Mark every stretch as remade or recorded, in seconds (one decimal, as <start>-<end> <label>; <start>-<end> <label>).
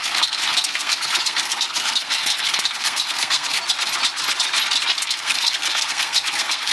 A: 0.0-3.6 remade; 3.6-5.0 recorded; 5.0-6.7 remade